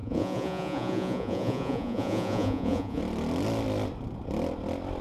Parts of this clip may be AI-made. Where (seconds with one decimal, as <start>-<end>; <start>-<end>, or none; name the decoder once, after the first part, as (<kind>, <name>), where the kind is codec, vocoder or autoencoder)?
0.0-3.0 (vocoder, Vocos)